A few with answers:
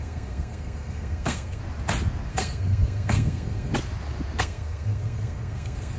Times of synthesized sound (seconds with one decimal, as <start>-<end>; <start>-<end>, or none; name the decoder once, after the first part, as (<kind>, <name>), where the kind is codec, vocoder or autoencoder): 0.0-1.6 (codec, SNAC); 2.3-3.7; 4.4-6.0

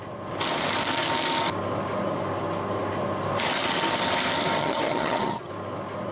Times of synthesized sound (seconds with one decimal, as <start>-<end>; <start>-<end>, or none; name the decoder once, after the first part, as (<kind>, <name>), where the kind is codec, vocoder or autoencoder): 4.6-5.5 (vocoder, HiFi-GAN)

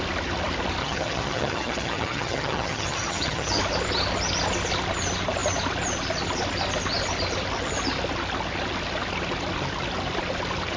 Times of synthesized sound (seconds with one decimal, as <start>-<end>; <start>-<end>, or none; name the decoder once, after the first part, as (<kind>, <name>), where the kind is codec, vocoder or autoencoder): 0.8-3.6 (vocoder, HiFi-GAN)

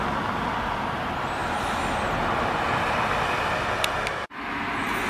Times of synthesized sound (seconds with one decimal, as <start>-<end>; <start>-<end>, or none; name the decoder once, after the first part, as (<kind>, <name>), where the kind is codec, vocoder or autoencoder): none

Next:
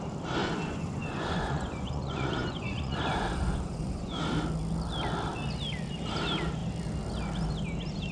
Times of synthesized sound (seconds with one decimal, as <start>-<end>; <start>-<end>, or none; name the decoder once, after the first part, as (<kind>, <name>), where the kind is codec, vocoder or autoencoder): 0.4-4.2 (vocoder, Vocos)